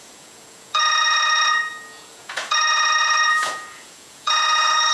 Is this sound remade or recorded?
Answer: remade